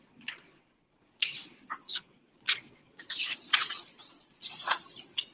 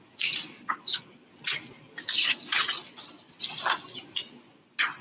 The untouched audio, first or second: second